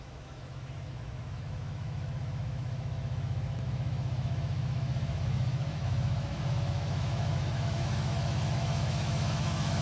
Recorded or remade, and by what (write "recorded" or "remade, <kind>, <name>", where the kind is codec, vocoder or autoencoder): remade, autoencoder, DAC-VAE